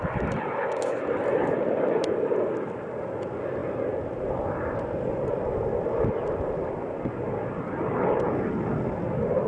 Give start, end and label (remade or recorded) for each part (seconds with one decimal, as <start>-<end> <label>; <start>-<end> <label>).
0.0-9.5 recorded